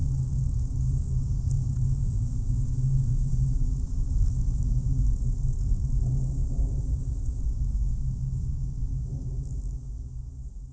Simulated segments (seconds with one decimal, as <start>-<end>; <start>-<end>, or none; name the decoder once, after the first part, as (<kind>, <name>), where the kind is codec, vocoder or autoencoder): 0.0-10.7 (autoencoder, DAC-VAE)